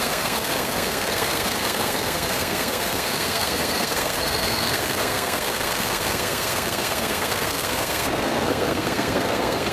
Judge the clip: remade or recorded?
remade